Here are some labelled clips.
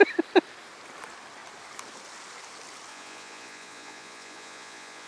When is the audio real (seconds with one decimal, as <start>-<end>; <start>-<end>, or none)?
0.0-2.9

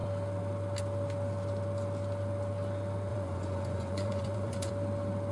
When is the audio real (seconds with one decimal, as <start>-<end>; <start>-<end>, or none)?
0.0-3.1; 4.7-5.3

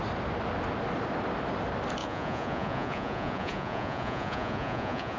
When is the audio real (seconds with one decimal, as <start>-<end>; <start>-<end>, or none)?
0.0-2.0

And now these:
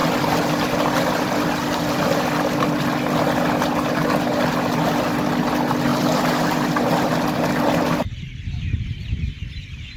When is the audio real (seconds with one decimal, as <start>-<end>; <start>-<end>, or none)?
0.0-10.0

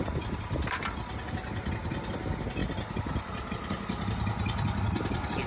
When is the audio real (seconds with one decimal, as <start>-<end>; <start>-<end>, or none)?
0.0-5.5

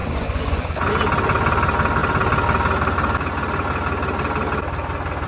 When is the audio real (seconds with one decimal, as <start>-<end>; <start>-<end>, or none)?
0.9-5.3

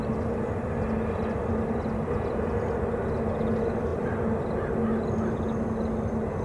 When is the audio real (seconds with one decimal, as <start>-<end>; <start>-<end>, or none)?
0.0-6.4